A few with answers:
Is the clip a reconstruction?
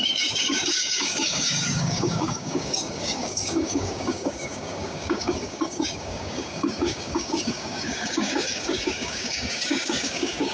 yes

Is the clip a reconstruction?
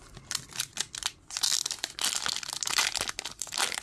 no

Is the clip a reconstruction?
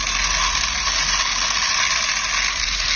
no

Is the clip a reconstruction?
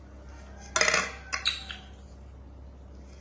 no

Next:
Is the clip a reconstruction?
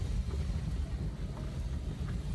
no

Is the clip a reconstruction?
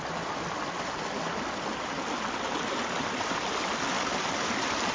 no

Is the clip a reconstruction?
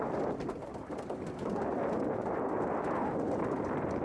no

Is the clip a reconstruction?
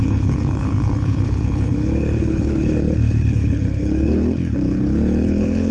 yes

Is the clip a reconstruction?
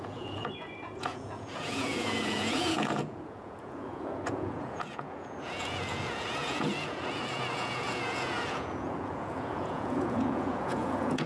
yes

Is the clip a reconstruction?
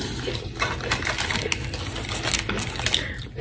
no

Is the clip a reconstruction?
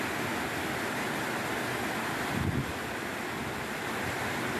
no